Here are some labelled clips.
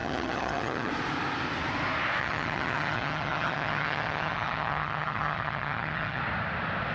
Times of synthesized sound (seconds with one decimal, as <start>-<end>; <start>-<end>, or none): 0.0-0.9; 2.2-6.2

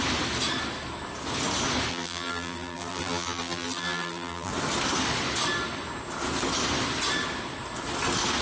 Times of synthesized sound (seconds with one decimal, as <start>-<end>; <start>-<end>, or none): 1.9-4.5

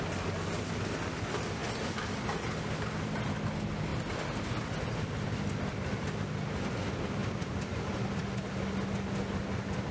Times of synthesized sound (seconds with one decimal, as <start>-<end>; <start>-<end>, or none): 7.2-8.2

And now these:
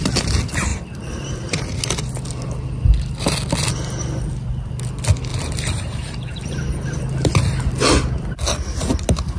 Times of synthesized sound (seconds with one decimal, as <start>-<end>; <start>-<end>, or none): 5.3-7.0

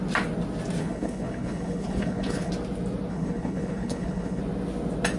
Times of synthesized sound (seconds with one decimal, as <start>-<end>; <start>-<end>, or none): 0.8-2.5; 3.1-4.4

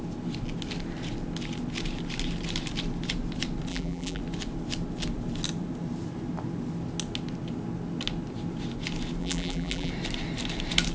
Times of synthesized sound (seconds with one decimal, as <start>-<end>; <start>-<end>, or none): 3.7-4.2; 9.2-9.9

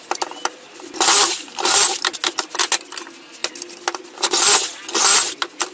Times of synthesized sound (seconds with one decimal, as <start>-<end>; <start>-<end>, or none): none

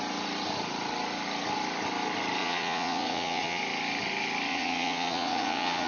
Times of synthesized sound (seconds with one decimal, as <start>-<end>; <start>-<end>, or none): 2.4-3.6; 4.5-5.9